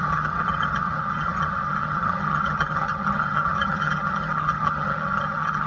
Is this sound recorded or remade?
remade